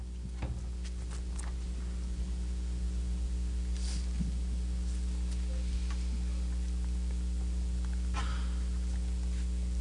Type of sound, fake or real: real